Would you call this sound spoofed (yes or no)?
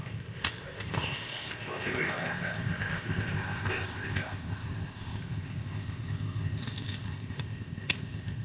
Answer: yes